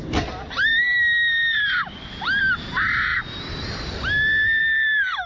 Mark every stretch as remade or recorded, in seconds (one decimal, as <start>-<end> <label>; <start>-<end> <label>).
0.0-5.3 recorded